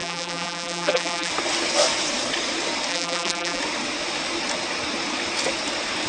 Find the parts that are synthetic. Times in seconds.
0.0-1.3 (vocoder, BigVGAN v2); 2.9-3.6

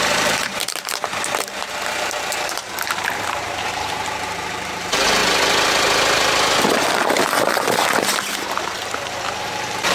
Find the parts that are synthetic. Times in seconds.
0.0-5.2 (vocoder, BigVGAN v2); 9.4-9.9

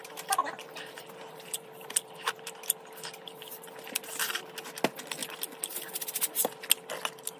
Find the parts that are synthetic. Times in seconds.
0.4-4.5 (vocoder, BigVGAN v2); 5.2-6.6

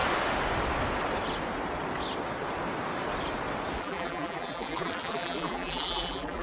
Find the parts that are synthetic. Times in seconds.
3.8-6.4 (vocoder, BigVGAN v2)

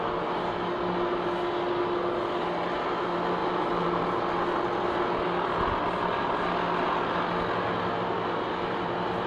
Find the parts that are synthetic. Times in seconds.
3.4-4.2 (vocoder, BigVGAN v2)